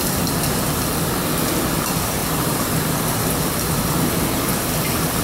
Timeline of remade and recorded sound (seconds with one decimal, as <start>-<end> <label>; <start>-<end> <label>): 0.0-2.2 recorded; 2.2-4.5 remade; 4.5-5.2 recorded